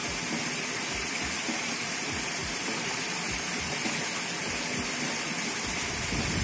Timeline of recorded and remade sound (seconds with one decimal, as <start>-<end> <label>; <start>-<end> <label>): 0.0-2.4 recorded; 2.4-6.0 remade; 6.0-6.4 recorded